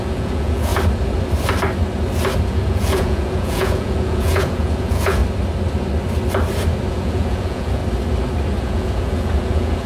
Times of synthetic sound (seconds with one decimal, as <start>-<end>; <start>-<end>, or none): 0.0-0.7; 2.5-5.2; 6.9-7.8; 8.6-9.9